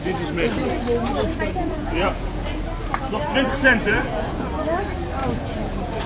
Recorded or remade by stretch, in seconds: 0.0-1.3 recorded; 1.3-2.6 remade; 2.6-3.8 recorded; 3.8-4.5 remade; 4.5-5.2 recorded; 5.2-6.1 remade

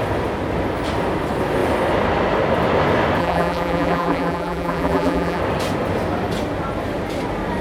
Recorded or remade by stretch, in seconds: 0.0-3.2 recorded; 3.2-5.4 remade; 5.4-7.6 recorded

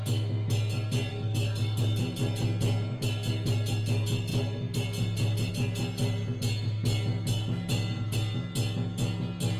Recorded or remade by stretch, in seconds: 0.0-1.1 recorded; 1.1-1.8 remade; 1.8-9.6 recorded

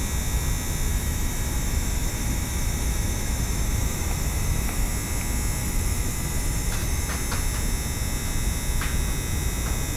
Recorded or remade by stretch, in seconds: 0.0-0.9 recorded; 0.9-4.9 remade; 4.9-5.6 recorded; 5.6-7.0 remade; 7.0-10.0 recorded

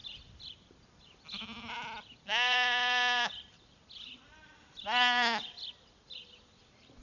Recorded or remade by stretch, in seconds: 0.0-1.7 recorded; 1.7-7.0 remade